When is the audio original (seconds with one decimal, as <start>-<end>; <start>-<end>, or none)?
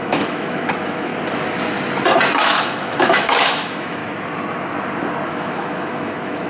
1.1-2.4; 4.0-5.3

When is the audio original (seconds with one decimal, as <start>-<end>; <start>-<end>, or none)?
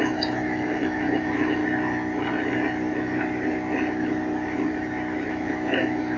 1.6-5.3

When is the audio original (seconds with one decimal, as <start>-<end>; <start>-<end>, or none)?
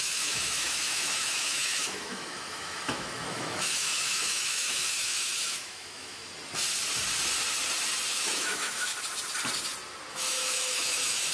6.2-8.1; 8.9-10.1